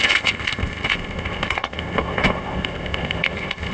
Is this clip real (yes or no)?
no